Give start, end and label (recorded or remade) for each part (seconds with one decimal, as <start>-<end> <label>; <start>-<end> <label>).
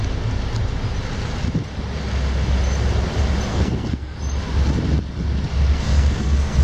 0.0-3.5 recorded; 3.5-4.2 remade; 4.2-5.7 recorded; 5.7-6.6 remade